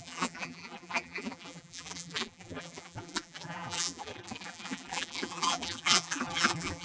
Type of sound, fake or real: fake